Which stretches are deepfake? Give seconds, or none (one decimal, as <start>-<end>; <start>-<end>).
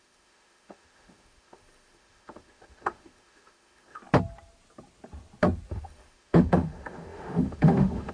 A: 0.0-4.0; 5.7-8.1